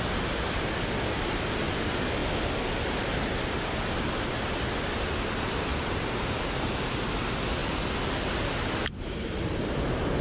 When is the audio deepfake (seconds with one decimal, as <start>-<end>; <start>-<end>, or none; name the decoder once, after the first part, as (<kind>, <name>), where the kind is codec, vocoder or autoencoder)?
5.7-6.2 (vocoder, BigVGAN v2)